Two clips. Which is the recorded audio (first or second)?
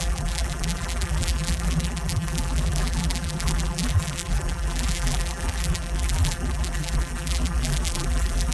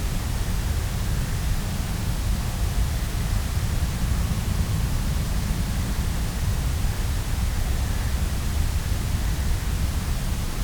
second